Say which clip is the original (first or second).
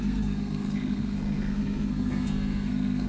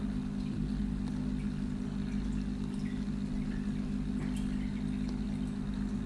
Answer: second